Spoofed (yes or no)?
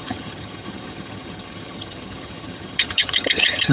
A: yes